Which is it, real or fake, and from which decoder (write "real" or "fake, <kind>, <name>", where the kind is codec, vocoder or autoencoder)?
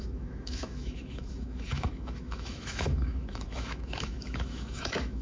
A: fake, autoencoder, DAC-VAE